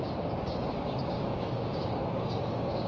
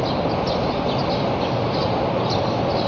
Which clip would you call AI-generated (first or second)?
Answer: first